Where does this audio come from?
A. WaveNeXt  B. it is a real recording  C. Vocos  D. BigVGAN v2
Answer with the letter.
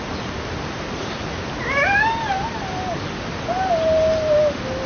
B